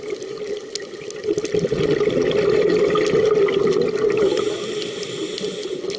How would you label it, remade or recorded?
recorded